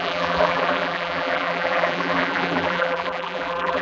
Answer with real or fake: fake